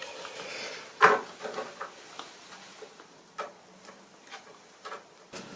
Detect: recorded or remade recorded